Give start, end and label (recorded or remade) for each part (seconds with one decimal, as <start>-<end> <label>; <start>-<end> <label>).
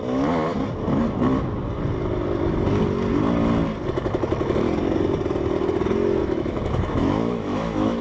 0.0-6.2 recorded; 6.2-8.0 remade